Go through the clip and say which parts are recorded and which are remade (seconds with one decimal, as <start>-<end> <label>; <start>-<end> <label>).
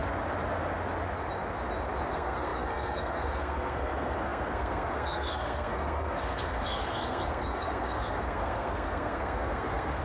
0.0-2.1 recorded; 2.1-10.0 remade